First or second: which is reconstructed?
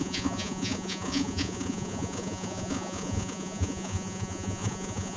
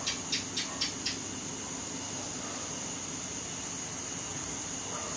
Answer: first